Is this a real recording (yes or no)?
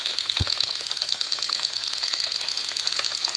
no